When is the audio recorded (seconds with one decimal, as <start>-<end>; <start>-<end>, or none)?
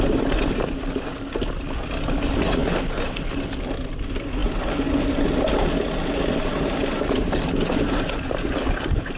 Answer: 0.0-9.2